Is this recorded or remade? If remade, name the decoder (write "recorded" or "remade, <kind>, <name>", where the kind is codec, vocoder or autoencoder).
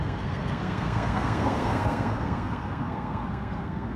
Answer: remade, codec, SNAC